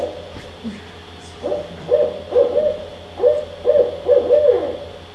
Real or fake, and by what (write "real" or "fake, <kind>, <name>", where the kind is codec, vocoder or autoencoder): real